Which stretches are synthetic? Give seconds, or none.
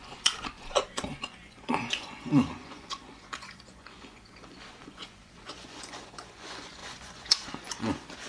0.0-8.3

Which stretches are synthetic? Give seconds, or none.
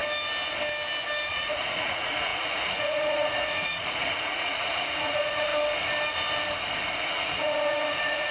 1.3-5.5; 7.1-8.3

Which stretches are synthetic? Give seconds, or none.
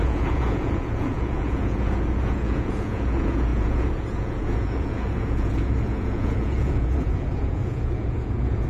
0.0-8.7